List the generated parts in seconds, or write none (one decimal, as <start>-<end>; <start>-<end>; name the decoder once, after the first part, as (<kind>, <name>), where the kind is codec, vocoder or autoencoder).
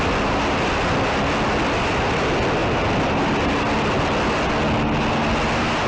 none